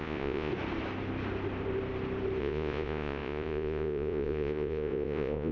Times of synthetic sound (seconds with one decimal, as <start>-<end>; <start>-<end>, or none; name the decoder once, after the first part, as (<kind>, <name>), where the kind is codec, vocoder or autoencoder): 0.0-0.5 (vocoder, Vocos); 2.4-5.5